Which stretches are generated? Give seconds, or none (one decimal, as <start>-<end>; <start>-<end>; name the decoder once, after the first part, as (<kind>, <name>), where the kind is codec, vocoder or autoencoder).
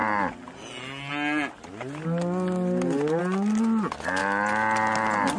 none